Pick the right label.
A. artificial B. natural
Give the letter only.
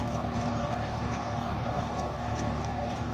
A